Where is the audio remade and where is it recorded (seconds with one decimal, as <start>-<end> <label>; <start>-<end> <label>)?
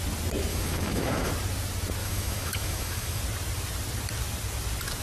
0.0-0.5 recorded; 0.5-1.3 remade; 1.3-2.0 recorded; 2.0-3.2 remade; 3.2-5.0 recorded